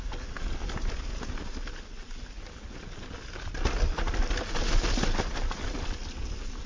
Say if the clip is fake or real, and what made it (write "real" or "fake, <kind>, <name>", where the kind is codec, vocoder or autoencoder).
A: real